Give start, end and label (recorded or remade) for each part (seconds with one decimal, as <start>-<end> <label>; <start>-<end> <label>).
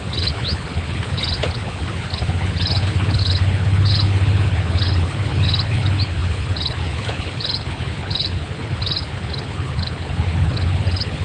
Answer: 0.0-11.2 remade